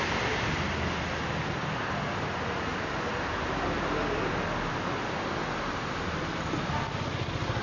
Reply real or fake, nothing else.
real